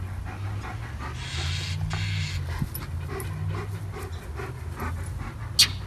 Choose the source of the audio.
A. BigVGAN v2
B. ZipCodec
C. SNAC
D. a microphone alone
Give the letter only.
D